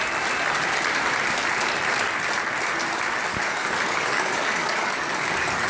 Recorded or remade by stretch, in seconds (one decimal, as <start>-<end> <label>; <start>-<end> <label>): 0.0-3.3 recorded; 3.3-5.7 remade